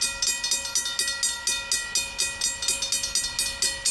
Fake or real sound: real